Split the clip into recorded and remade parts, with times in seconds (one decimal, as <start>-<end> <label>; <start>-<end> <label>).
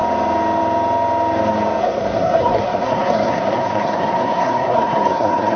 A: 0.0-1.8 recorded; 1.8-5.6 remade